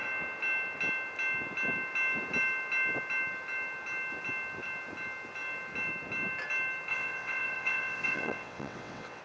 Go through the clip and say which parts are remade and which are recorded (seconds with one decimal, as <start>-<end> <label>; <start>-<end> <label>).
0.0-6.9 recorded; 6.9-9.2 remade